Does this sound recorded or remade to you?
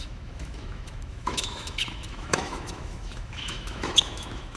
remade